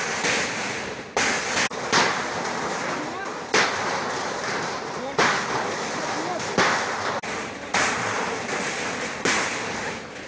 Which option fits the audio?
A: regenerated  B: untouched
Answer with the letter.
B